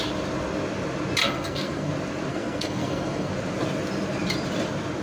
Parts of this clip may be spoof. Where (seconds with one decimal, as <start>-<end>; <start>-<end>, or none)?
1.2-1.9; 2.3-3.3